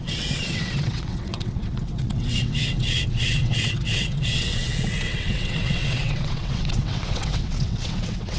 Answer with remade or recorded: remade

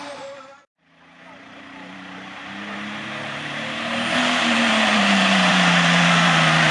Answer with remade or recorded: remade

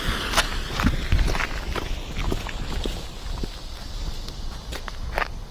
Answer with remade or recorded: recorded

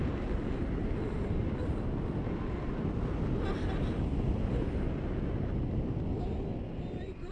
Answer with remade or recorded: recorded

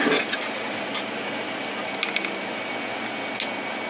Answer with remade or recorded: recorded